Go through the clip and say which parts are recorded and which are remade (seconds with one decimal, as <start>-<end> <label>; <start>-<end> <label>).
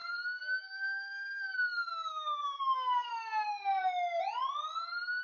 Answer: 0.0-3.1 remade; 3.1-5.2 recorded